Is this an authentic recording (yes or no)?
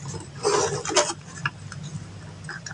yes